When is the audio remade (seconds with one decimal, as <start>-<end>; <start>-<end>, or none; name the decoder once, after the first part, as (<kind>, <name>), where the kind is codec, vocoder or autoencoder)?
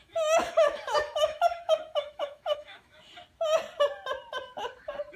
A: 0.0-3.1 (autoencoder, DAC-VAE)